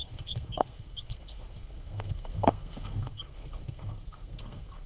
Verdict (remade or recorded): remade